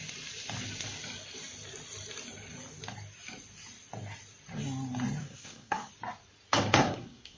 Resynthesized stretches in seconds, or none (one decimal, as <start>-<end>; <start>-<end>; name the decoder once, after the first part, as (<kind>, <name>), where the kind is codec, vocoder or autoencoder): 5.2-5.9 (codec, SNAC); 6.7-7.4